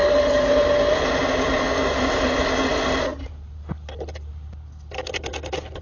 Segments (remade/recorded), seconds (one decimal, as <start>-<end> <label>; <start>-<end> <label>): 0.0-5.8 recorded